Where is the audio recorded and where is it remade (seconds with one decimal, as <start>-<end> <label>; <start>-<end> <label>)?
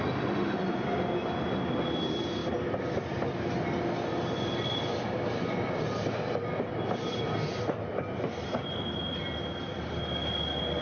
0.0-2.4 recorded; 2.4-3.0 remade; 3.0-6.7 recorded; 6.7-7.2 remade; 7.2-10.8 recorded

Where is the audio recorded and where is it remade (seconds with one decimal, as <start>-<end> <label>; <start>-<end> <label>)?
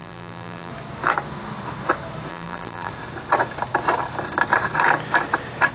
0.0-0.7 remade; 0.7-2.3 recorded; 2.3-2.9 remade; 2.9-5.7 recorded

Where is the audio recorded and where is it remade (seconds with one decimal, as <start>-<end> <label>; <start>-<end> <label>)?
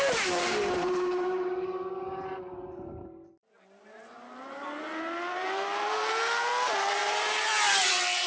0.0-8.3 remade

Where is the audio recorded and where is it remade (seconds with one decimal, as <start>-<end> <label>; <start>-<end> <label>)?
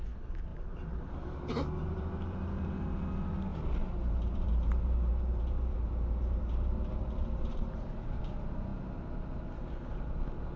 0.0-0.5 recorded; 0.5-2.5 remade; 2.5-3.5 recorded; 3.5-8.2 remade; 8.2-10.6 recorded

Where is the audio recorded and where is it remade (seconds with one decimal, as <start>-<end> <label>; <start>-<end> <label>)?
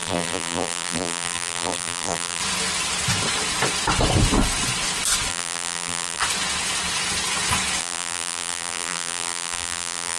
0.0-2.4 remade; 2.4-5.3 recorded; 5.3-6.2 remade; 6.2-7.8 recorded; 7.8-10.2 remade